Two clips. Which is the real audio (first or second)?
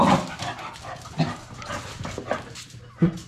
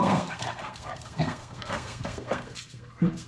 first